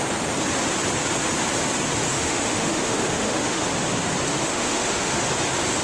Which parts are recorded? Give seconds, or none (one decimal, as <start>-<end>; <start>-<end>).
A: 0.0-2.1; 3.6-4.3; 5.2-5.8